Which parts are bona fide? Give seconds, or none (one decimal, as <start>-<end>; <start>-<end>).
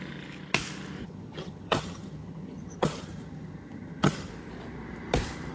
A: 0.0-1.0; 4.3-5.5